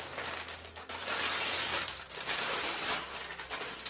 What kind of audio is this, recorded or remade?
recorded